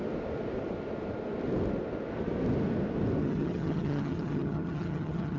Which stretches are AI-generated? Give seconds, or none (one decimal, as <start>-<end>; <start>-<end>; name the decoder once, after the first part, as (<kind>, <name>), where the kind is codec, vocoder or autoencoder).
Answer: 3.2-5.4 (vocoder, HiFi-GAN)